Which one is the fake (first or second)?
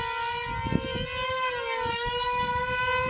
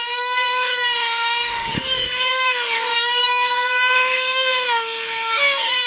second